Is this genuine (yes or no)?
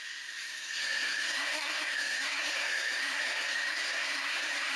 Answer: no